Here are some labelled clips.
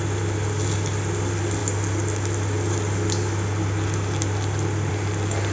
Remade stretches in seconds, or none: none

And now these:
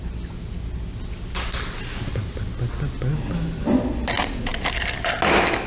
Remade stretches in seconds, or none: none

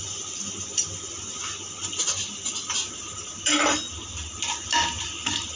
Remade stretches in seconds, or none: 1.8-3.9 (vocoder, BigVGAN v2)

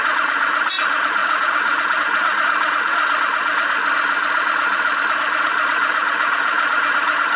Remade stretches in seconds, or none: 0.0-3.8 (vocoder, Vocos); 5.1-7.4

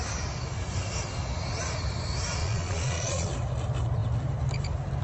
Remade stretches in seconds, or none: 2.4-3.3 (vocoder, Vocos)